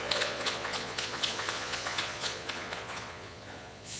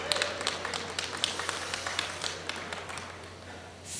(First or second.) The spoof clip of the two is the first